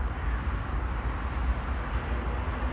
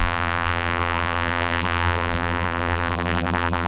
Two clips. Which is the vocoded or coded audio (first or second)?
second